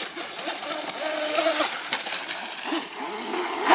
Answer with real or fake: real